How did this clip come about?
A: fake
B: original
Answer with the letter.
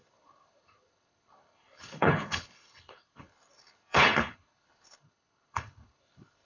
A